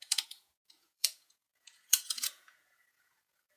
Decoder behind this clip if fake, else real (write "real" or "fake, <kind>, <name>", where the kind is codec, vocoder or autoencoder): fake, vocoder, Vocos